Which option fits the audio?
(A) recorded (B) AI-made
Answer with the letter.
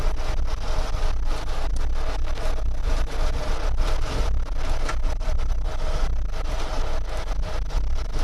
A